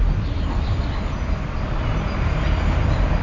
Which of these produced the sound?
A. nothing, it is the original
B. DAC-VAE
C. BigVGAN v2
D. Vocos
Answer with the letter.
A